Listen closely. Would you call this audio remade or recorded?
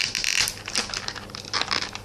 recorded